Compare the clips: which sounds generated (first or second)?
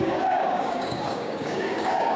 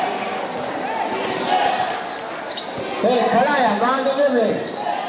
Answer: first